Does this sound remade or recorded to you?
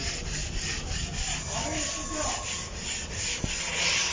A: recorded